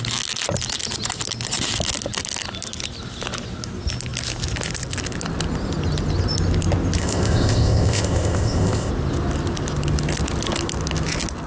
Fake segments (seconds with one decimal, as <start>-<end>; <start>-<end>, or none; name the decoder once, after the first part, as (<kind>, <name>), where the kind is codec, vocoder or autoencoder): 7.0-8.9 (codec, ZipCodec)